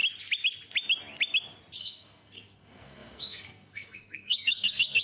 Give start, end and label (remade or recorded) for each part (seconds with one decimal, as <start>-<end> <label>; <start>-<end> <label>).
0.0-1.8 recorded; 1.8-5.0 remade